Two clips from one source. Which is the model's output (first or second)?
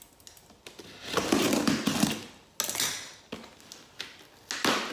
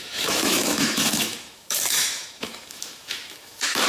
second